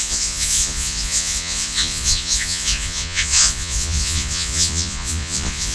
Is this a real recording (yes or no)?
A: no